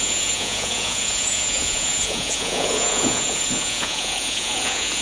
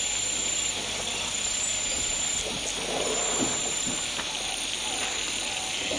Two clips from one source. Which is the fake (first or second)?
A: first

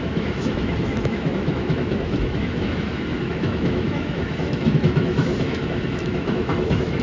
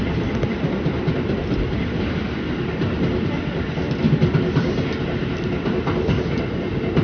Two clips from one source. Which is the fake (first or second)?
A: first